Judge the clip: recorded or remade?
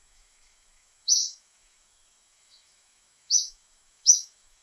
remade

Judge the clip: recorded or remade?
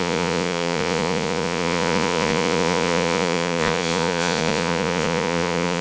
remade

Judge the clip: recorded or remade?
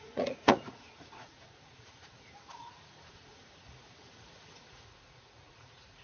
remade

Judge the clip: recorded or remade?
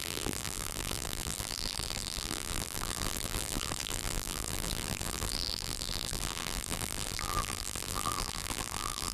remade